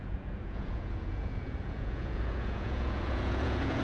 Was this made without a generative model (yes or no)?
no